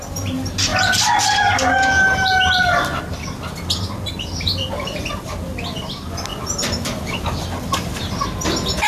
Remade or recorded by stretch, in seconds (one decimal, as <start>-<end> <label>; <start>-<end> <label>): 0.0-0.7 recorded; 0.7-3.0 remade; 3.0-6.3 recorded; 6.3-7.2 remade; 7.2-8.9 recorded